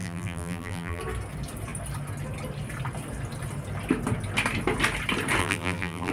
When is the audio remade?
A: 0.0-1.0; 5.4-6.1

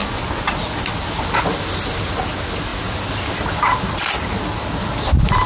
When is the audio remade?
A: none

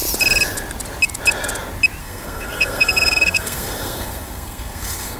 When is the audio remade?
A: 2.0-5.2

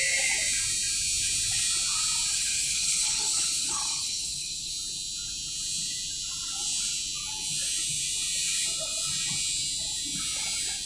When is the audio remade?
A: 2.3-4.7

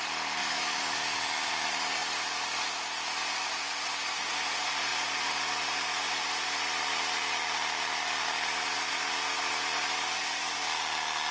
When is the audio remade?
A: 0.4-1.5

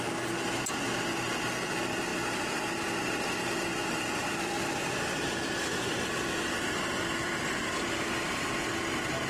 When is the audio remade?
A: 3.4-8.5

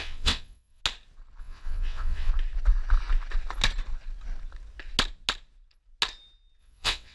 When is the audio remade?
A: 0.0-0.8; 1.4-2.3; 6.6-7.1